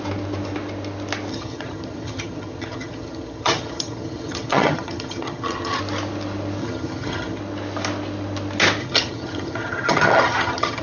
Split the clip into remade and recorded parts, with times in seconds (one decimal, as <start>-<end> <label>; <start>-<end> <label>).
0.0-1.3 recorded; 1.3-5.8 remade; 5.8-6.6 recorded; 6.6-7.4 remade; 7.4-8.8 recorded; 8.8-10.8 remade